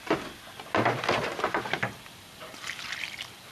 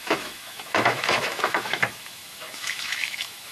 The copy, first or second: second